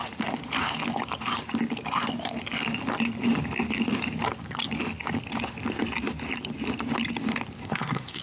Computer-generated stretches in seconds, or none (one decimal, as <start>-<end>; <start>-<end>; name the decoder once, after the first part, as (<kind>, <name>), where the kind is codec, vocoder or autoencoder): 7.6-8.2 (codec, SNAC)